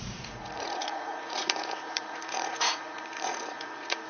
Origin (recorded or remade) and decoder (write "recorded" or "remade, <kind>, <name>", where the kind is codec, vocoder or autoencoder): remade, vocoder, Vocos